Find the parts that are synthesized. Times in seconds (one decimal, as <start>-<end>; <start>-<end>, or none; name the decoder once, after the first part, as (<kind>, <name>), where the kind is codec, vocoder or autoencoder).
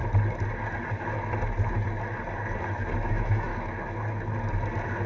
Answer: 3.1-3.5 (autoencoder, DAC-VAE)